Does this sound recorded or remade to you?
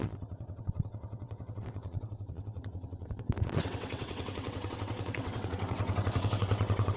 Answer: remade